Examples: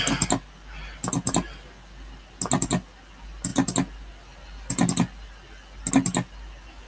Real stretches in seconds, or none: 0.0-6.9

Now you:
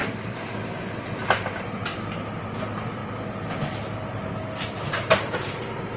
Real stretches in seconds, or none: 1.9-2.6; 3.0-5.3

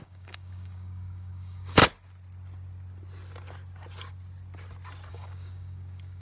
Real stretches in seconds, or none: 1.8-5.1

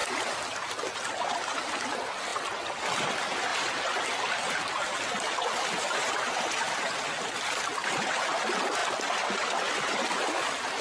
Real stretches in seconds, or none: 0.0-10.8

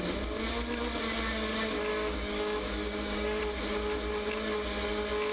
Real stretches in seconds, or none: 0.0-1.9; 3.4-5.3